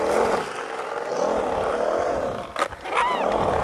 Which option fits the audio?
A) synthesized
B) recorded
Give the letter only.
B